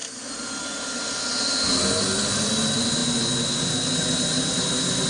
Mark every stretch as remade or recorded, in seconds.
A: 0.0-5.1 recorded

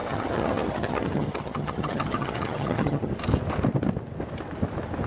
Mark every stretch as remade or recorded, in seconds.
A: 0.0-3.1 remade; 3.1-5.1 recorded

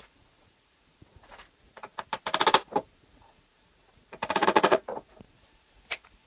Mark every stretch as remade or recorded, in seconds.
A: 0.0-1.9 remade; 1.9-3.0 recorded; 3.0-6.3 remade

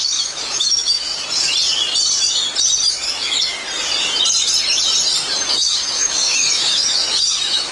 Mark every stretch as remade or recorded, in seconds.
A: 0.0-1.1 remade; 1.1-2.9 recorded; 2.9-3.6 remade; 3.6-5.5 recorded; 5.5-7.7 remade

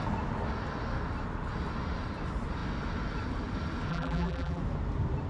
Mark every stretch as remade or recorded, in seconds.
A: 0.0-3.9 recorded; 3.9-4.6 remade; 4.6-5.3 recorded